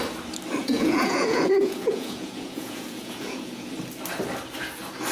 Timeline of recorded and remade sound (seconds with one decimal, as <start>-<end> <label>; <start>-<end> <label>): 0.0-0.6 recorded; 0.6-3.7 remade; 3.7-5.1 recorded